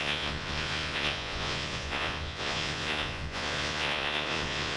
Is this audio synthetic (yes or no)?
yes